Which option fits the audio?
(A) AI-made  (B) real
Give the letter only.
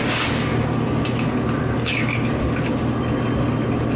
B